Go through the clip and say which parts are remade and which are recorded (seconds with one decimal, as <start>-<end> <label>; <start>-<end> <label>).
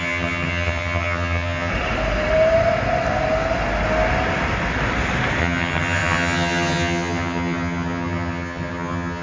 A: 0.0-1.7 remade; 1.7-5.4 recorded; 5.4-9.2 remade